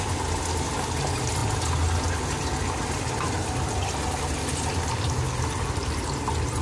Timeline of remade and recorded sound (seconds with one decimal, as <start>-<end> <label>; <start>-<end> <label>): 0.0-6.6 recorded